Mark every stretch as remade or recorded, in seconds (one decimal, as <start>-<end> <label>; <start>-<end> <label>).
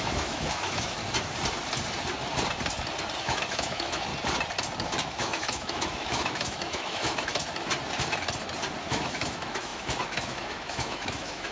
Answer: 0.0-1.0 remade; 1.0-3.2 recorded; 3.2-4.1 remade; 4.1-5.1 recorded; 5.1-7.3 remade; 7.3-8.8 recorded; 8.8-11.5 remade